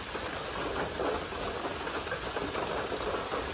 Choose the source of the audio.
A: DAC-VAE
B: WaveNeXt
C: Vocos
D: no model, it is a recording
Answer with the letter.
D